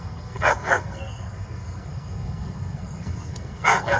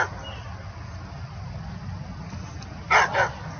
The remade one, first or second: first